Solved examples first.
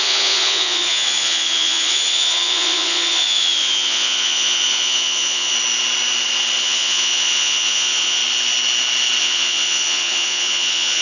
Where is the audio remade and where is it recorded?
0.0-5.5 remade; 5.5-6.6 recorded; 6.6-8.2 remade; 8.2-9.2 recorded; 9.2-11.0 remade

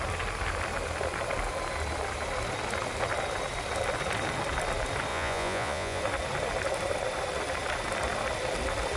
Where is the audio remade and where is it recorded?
0.0-5.1 recorded; 5.1-6.0 remade; 6.0-9.0 recorded

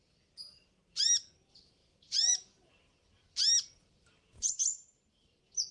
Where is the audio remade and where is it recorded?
0.0-5.7 recorded